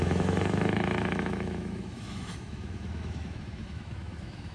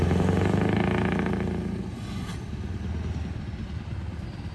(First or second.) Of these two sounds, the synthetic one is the first